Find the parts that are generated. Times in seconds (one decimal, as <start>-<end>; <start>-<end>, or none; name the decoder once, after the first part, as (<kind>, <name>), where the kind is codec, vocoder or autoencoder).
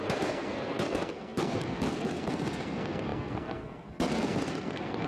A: 0.0-5.1 (codec, SNAC)